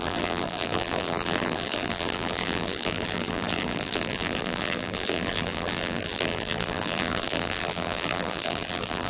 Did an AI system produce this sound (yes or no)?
yes